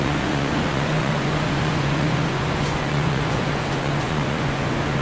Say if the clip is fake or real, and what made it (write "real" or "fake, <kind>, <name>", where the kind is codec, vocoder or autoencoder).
fake, vocoder, Vocos